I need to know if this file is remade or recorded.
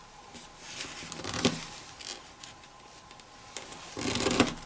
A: recorded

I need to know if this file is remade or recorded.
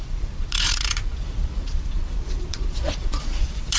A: remade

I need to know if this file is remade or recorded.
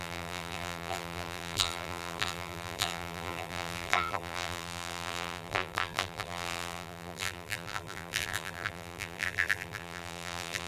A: remade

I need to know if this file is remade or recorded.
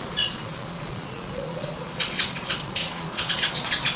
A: remade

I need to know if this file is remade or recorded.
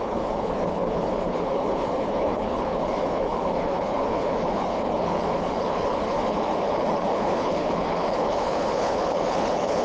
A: remade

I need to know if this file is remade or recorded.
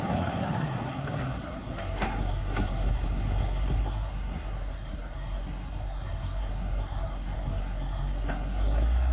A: remade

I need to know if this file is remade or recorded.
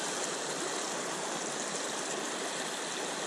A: recorded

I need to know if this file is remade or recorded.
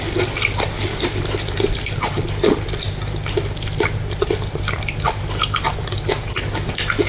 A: recorded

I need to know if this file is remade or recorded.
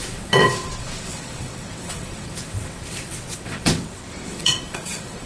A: remade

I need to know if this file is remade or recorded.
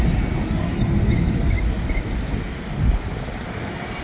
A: recorded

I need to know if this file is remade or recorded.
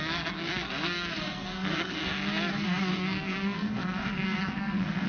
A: remade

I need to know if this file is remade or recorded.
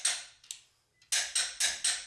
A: recorded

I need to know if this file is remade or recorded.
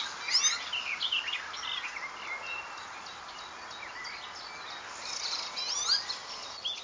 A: recorded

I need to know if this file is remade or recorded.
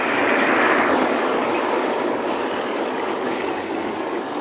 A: remade